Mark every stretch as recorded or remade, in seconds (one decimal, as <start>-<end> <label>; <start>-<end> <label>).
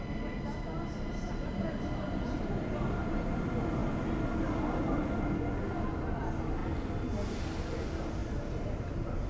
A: 0.0-9.3 recorded